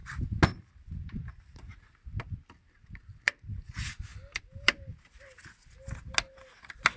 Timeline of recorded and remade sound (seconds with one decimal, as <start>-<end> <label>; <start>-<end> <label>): 0.0-7.0 recorded